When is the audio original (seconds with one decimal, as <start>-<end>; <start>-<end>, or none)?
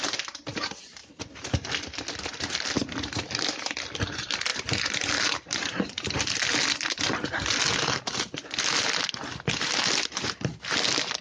0.0-11.2